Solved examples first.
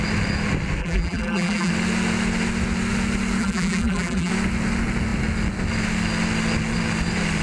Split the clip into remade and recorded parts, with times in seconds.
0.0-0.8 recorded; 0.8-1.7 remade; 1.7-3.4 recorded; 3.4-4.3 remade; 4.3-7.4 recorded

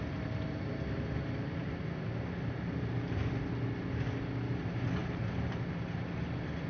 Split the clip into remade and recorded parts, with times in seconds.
0.0-6.7 recorded

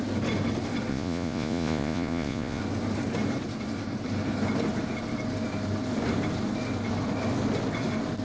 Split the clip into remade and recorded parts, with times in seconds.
0.0-0.9 recorded; 0.9-2.6 remade; 2.6-8.2 recorded